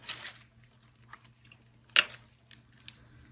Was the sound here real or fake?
real